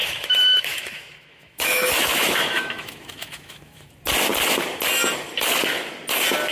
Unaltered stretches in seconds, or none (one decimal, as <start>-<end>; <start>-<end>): 3.9-6.5